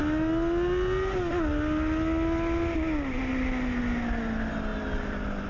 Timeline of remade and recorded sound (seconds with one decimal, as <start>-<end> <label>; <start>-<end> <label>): 0.0-5.5 recorded

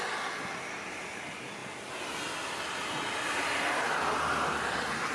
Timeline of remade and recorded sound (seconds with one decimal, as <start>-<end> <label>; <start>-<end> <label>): 0.0-5.1 recorded

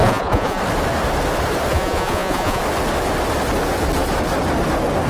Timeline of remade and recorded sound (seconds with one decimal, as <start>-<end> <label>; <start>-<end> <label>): 0.0-0.6 remade; 0.6-1.7 recorded; 1.7-2.6 remade; 2.6-5.1 recorded

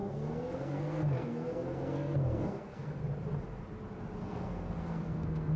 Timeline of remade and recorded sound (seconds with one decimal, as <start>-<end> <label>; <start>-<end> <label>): 0.0-3.0 remade; 3.0-4.2 recorded; 4.2-5.6 remade

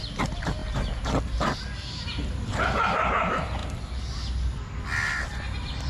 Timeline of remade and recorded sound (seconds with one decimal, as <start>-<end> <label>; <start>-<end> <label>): 0.0-5.9 recorded